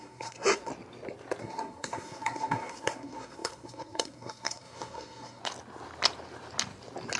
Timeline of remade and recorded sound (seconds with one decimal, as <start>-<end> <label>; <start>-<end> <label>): 0.0-0.7 remade; 0.7-1.4 recorded; 1.4-5.4 remade; 5.4-7.2 recorded